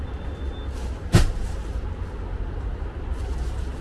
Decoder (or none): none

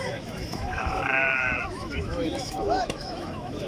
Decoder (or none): autoencoder, DAC-VAE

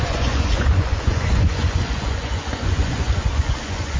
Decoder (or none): vocoder, Vocos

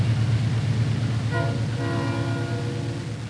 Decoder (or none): none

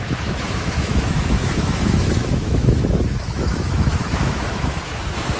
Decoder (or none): autoencoder, DAC-VAE